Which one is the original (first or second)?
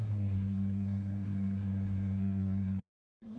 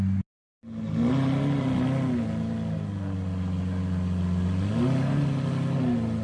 second